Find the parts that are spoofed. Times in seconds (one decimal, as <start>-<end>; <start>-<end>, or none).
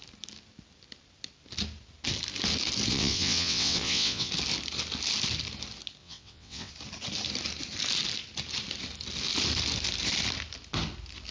2.9-4.3; 6.0-6.7